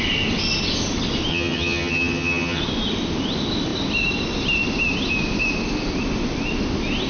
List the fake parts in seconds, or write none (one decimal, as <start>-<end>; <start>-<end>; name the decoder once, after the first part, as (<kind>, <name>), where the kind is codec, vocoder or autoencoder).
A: 1.3-2.6 (vocoder, HiFi-GAN)